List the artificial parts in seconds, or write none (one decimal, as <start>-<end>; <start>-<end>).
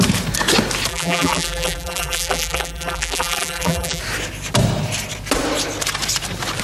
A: 0.9-4.0